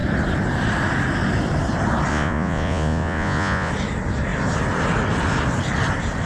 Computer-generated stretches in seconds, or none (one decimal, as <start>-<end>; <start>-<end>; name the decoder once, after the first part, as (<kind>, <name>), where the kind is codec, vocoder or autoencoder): 2.1-3.7 (vocoder, Vocos)